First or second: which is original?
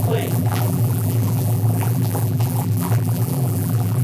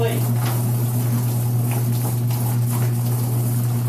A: second